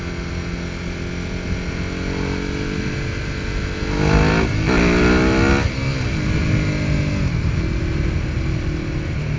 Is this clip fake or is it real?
real